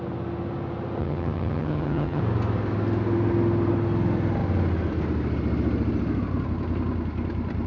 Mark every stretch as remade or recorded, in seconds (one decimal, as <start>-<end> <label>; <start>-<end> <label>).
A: 0.0-1.0 recorded; 1.0-2.2 remade; 2.2-7.7 recorded